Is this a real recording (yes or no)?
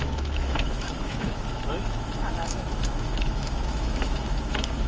no